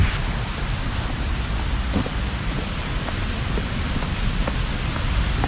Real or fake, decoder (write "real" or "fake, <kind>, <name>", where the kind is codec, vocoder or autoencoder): fake, vocoder, BigVGAN v2